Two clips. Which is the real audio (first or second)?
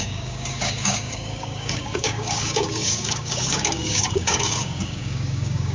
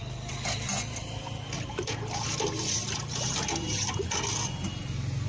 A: second